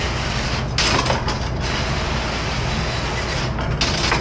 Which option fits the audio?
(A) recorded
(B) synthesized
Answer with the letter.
A